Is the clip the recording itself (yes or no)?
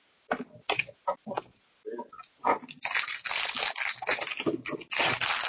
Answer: yes